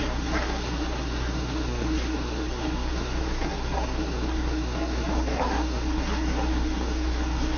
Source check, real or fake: fake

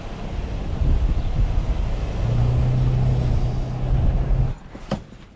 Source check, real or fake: real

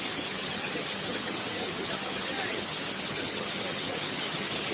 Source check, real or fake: fake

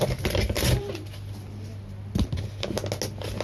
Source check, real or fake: real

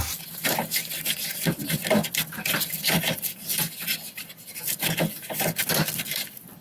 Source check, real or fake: real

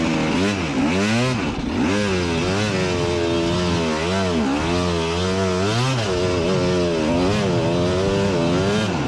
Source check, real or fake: real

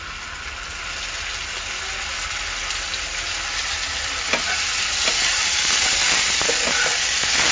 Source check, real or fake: real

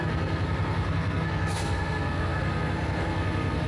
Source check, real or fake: fake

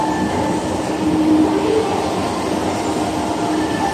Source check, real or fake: real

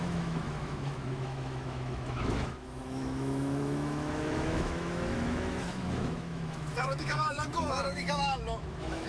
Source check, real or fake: fake